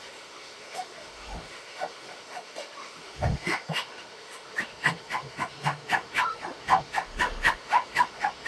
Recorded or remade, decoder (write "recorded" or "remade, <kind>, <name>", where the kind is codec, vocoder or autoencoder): remade, autoencoder, DAC-VAE